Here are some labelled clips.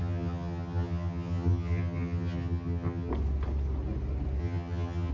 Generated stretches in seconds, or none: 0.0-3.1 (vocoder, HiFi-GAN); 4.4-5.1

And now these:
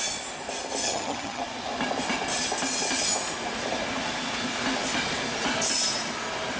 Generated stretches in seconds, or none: 0.8-1.4 (vocoder, HiFi-GAN)

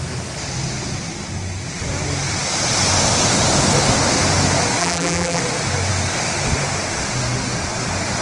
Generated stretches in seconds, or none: 4.8-5.4 (vocoder, BigVGAN v2)